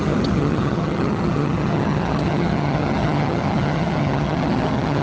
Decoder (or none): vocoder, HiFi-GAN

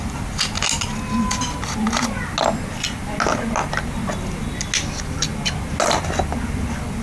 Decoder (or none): none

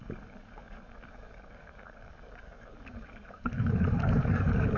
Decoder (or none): codec, DAC